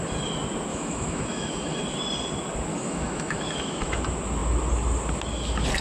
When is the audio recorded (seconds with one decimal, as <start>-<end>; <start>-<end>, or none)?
0.0-0.7; 1.8-2.7; 4.0-5.8